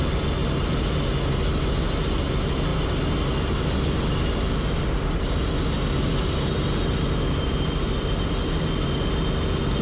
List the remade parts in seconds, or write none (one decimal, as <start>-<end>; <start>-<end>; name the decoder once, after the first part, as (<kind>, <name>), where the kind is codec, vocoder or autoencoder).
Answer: none